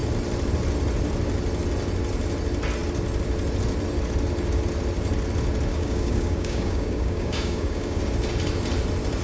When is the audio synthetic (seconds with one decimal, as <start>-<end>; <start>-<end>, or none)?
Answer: 5.7-8.0